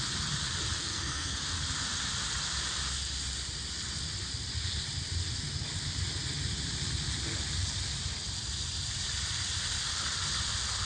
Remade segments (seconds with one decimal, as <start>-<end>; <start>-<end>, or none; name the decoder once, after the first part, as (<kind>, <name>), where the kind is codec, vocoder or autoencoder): 0.8-1.4 (codec, SNAC)

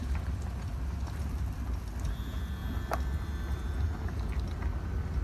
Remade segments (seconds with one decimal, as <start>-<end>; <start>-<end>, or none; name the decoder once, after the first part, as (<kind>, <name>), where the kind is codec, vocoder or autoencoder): none

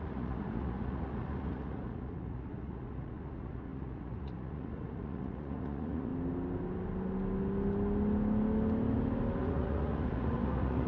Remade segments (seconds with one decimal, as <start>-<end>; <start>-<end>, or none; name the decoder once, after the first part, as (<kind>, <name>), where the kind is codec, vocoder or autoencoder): 0.0-6.1 (vocoder, Vocos); 9.4-10.9

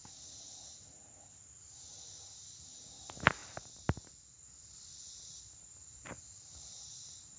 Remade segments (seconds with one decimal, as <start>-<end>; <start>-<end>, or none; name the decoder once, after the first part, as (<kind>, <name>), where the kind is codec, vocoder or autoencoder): none

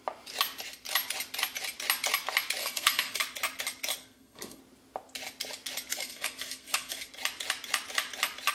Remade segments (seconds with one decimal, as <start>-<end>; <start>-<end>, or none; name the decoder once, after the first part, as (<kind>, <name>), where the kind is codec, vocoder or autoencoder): 2.6-3.2 (codec, SNAC); 4.0-4.6; 5.9-7.1

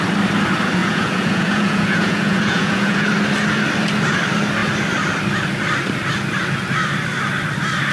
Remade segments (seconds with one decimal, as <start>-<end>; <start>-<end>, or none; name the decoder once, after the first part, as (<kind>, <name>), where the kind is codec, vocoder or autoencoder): 0.8-3.1 (vocoder, Vocos)